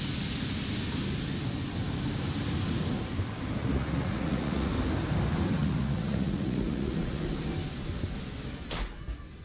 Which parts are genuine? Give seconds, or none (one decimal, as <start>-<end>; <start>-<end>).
0.0-3.6; 4.7-5.6; 7.2-9.4